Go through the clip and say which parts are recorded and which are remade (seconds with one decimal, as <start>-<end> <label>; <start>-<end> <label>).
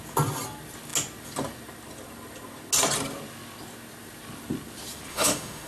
0.0-5.1 recorded; 5.1-5.7 remade